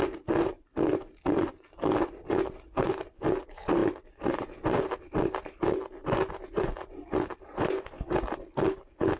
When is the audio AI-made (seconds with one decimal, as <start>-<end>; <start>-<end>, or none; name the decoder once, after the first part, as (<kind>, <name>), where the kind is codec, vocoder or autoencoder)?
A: none